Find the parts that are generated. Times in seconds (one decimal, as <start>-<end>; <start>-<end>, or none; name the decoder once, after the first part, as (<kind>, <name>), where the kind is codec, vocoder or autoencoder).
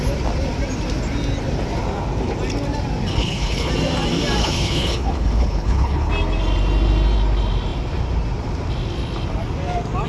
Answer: 3.1-3.7 (codec, HILCodec); 4.4-6.1